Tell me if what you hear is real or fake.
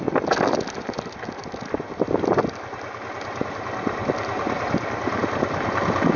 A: real